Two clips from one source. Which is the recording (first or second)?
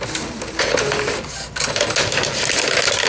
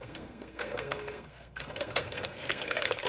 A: first